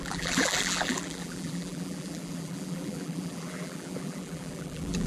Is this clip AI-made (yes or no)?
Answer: yes